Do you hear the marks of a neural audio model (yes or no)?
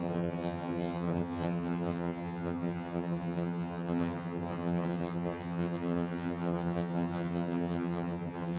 yes